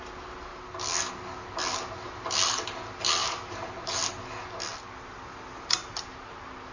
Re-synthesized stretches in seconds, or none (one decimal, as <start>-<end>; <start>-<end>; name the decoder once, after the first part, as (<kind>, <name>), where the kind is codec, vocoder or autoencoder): 3.2-4.1 (vocoder, BigVGAN v2)